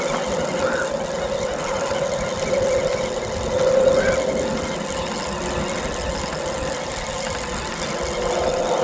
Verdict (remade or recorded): recorded